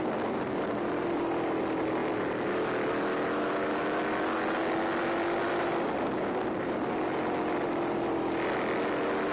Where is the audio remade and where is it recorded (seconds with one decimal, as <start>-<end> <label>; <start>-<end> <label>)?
0.0-9.3 recorded